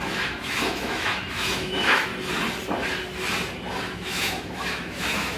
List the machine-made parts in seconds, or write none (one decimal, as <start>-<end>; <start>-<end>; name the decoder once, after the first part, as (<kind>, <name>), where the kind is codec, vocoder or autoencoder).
0.0-2.1 (autoencoder, DAC-VAE); 3.8-5.4